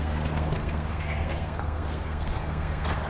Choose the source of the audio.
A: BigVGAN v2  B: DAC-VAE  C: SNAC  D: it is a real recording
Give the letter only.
C